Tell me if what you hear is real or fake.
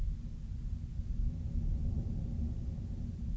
real